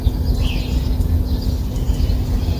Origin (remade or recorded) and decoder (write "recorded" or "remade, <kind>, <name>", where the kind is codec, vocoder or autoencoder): recorded